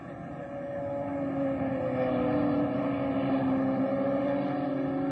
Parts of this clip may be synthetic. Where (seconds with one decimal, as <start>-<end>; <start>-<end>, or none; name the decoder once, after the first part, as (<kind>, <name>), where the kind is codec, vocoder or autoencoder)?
none